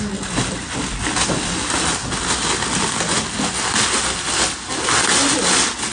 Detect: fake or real real